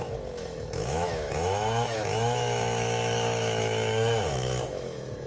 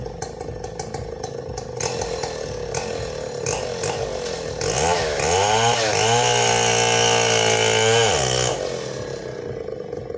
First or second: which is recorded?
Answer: second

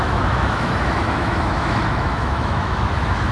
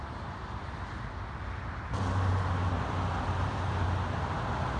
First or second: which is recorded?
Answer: second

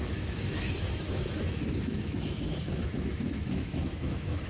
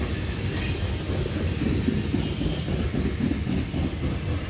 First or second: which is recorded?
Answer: second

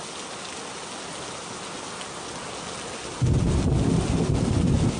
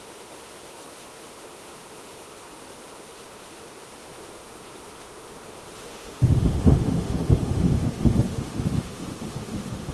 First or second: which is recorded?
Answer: first